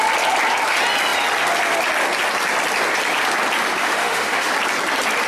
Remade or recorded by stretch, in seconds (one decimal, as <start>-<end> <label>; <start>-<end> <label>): 0.0-3.8 recorded; 3.8-4.5 remade; 4.5-5.3 recorded